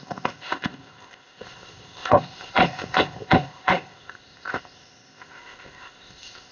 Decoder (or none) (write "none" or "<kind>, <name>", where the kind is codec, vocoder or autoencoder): codec, ZipCodec